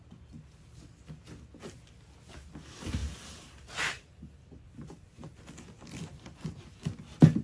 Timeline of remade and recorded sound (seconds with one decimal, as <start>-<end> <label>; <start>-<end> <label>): 0.0-3.0 recorded; 3.0-7.0 remade; 7.0-7.4 recorded